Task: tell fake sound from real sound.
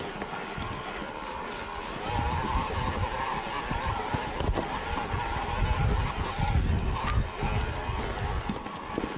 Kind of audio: real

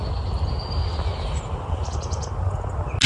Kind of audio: real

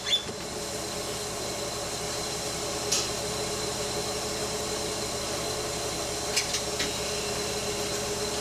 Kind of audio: real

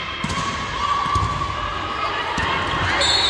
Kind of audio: real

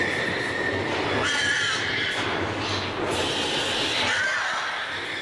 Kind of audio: real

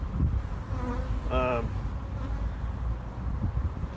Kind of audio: real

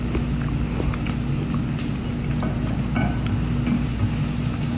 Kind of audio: real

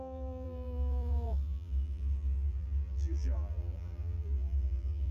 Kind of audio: fake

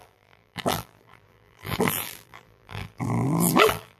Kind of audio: fake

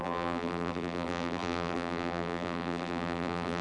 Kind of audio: fake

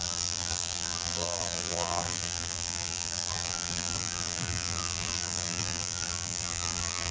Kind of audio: fake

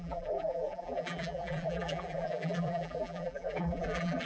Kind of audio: fake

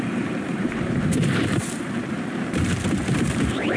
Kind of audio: fake